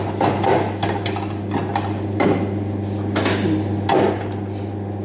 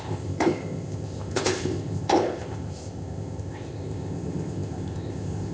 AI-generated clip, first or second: second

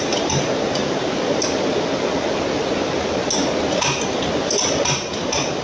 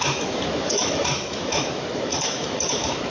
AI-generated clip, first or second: second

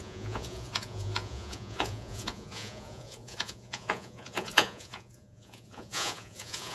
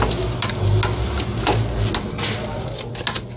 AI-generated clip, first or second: first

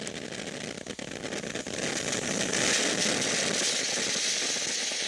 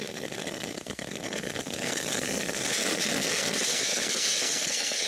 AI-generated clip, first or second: second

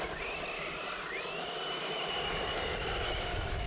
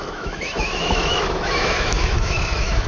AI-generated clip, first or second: second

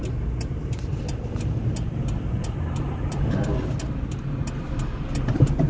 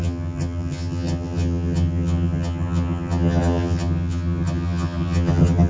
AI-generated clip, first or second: second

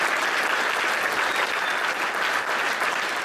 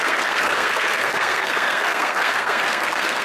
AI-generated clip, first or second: second